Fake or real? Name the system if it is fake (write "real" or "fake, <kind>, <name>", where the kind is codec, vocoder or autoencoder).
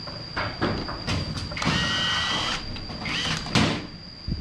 real